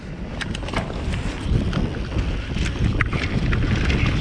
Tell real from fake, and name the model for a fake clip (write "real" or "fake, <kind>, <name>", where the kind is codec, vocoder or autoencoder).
real